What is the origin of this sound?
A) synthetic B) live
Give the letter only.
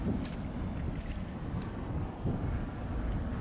B